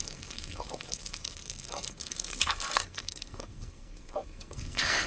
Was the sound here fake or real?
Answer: fake